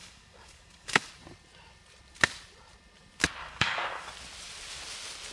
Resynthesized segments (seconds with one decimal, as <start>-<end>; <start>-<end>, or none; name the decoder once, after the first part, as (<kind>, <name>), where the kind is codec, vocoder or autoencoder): 0.0-1.1 (codec, DAC); 3.4-4.1